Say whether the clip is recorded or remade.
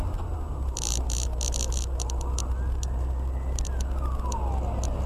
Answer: recorded